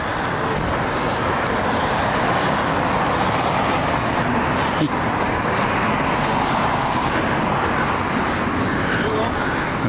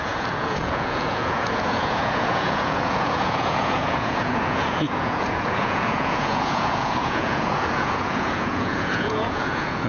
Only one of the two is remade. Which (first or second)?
second